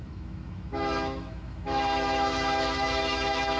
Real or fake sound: fake